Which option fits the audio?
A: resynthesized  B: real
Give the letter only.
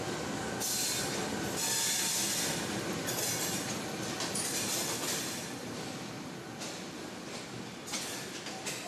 B